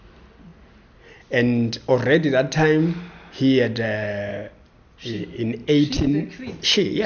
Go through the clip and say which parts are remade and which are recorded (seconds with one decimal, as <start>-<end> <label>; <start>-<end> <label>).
0.0-7.1 recorded